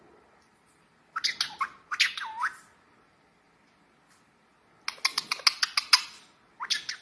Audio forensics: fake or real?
real